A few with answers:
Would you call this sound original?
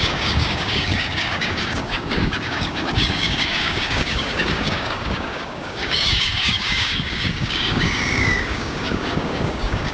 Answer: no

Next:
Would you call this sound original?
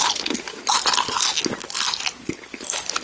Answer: yes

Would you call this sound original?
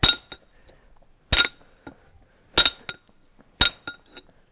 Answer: yes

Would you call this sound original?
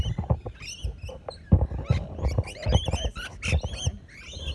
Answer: yes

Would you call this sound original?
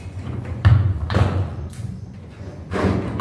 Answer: no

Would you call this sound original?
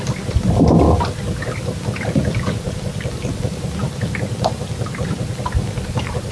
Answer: yes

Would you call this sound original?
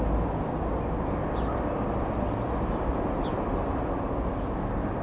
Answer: yes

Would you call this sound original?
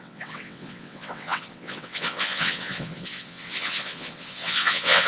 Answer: no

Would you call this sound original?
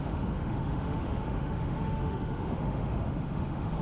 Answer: no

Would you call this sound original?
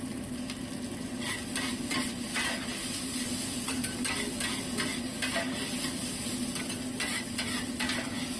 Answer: yes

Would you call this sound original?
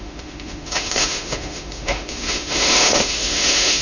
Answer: no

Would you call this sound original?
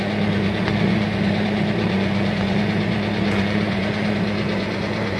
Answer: no